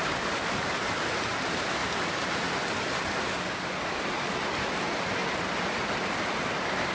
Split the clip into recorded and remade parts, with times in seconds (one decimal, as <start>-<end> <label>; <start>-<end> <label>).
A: 0.0-1.8 remade; 1.8-4.1 recorded; 4.1-6.9 remade